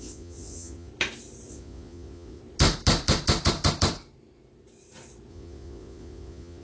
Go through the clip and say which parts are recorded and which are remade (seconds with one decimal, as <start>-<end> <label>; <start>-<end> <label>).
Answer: 0.0-0.9 remade; 0.9-1.5 recorded; 1.5-2.4 remade; 2.4-5.3 recorded; 5.3-6.6 remade